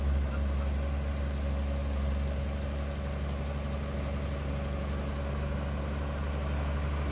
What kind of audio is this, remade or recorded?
recorded